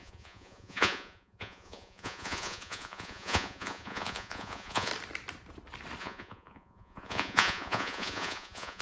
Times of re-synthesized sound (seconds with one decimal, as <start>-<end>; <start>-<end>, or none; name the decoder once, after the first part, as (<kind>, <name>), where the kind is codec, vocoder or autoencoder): 0.0-4.9 (vocoder, Vocos); 6.0-8.8